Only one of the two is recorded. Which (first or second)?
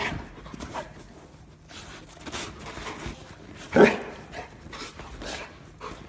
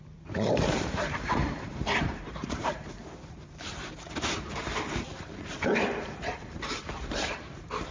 first